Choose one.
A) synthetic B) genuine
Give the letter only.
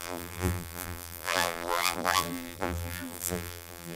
A